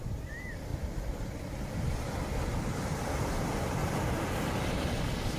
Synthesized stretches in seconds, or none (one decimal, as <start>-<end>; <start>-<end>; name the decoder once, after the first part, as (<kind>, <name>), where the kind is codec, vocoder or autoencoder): 2.3-4.1 (vocoder, BigVGAN v2)